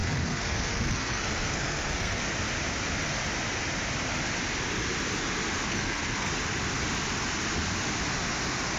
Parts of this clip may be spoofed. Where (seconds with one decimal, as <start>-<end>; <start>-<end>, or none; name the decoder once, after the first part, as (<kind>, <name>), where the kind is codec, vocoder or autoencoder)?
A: 0.0-2.2 (codec, SNAC); 5.7-6.3